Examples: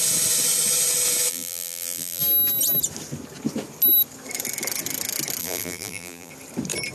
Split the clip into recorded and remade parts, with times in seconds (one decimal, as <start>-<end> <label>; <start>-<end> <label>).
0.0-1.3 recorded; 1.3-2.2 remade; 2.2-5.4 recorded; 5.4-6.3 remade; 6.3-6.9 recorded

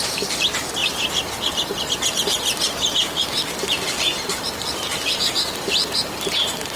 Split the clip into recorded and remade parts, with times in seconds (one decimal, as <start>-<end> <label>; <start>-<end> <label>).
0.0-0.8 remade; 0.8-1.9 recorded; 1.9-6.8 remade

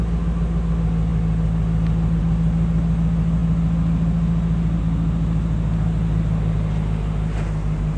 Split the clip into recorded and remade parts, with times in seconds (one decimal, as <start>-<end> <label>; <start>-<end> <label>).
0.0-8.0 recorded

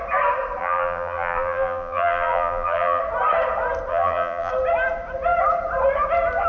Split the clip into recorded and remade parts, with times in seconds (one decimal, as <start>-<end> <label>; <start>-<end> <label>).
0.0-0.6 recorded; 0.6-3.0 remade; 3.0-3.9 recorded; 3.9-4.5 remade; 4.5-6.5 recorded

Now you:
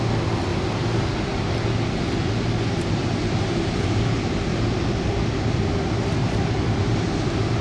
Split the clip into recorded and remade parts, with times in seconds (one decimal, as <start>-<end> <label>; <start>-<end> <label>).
0.0-0.5 recorded; 0.5-1.1 remade; 1.1-3.0 recorded; 3.0-3.8 remade; 3.8-4.5 recorded; 4.5-5.5 remade; 5.5-6.2 recorded; 6.2-7.1 remade; 7.1-7.6 recorded

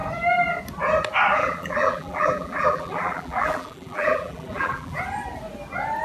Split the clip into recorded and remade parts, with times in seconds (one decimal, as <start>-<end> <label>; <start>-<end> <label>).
0.0-1.4 recorded; 1.4-5.0 remade; 5.0-6.0 recorded